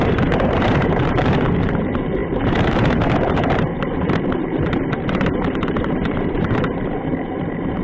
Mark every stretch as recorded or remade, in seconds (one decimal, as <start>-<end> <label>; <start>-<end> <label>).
0.0-7.8 remade